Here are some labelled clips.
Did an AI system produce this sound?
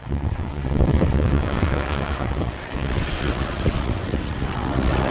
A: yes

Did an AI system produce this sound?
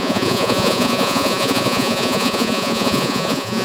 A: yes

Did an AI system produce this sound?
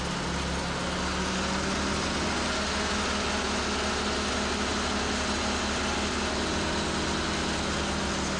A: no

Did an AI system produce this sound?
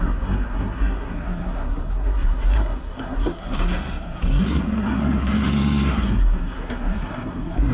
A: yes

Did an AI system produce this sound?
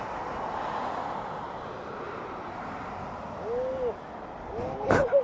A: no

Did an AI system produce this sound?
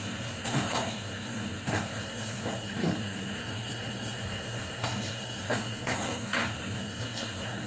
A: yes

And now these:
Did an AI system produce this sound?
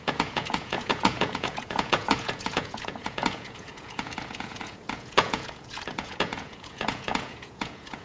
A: yes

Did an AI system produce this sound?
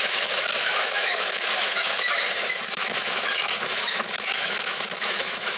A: yes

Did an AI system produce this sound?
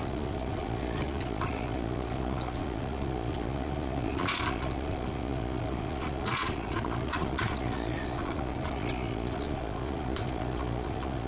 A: yes